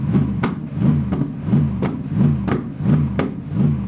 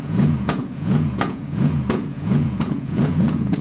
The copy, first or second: second